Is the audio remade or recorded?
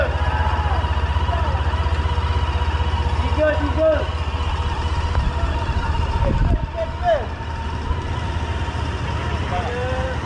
recorded